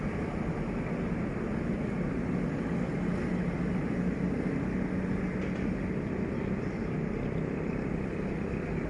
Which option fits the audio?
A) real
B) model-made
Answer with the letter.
A